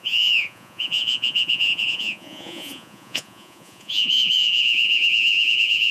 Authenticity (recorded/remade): remade